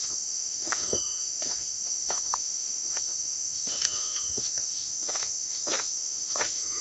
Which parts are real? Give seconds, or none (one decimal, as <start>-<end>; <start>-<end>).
none